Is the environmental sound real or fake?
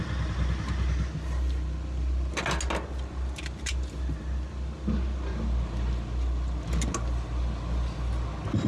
real